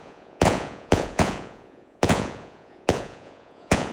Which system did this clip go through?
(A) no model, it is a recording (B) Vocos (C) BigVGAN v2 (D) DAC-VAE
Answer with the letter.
B